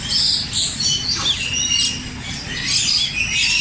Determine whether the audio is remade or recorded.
recorded